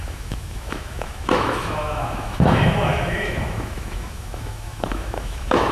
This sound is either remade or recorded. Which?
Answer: remade